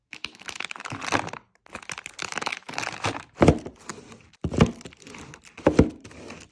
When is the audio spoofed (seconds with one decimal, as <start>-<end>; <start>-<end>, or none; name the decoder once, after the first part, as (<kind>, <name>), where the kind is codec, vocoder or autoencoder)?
0.0-1.0 (autoencoder, DAC-VAE); 2.2-2.8